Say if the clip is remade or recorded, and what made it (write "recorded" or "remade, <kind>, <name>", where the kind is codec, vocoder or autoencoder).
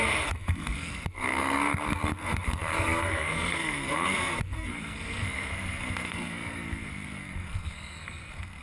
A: remade, codec, SNAC